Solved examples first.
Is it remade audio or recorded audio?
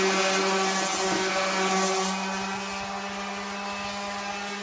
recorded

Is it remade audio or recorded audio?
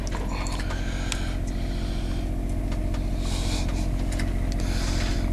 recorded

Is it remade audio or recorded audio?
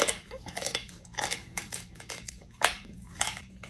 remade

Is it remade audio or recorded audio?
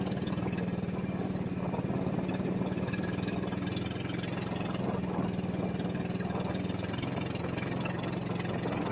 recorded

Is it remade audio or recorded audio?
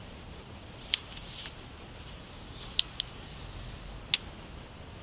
recorded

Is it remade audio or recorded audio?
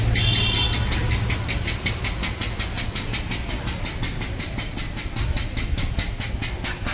recorded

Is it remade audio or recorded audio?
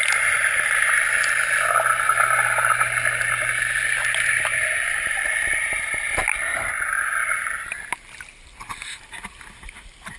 recorded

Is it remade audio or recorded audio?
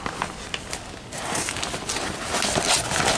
recorded